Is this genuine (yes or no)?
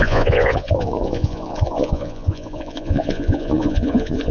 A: no